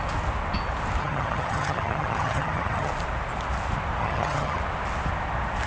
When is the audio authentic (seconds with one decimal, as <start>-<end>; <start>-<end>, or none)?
0.0-1.0; 2.9-4.0; 4.6-5.7